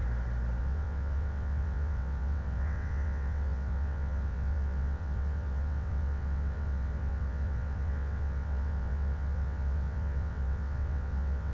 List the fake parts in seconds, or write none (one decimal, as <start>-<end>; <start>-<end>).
0.6-11.5